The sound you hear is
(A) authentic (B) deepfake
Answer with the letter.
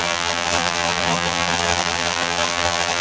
B